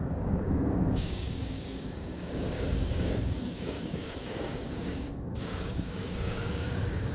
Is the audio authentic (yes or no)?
no